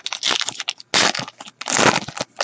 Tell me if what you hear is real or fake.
real